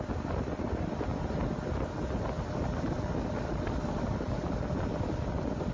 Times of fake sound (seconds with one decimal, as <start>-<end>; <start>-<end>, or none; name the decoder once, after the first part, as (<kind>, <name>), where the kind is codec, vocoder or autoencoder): none

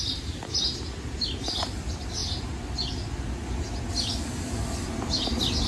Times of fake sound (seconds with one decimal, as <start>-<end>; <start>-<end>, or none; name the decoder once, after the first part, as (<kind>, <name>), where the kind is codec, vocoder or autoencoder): none

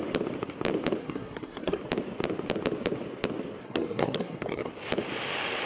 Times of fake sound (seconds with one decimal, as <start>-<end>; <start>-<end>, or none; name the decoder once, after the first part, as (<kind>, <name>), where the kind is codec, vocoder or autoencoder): 1.0-1.8 (codec, SNAC); 3.6-4.7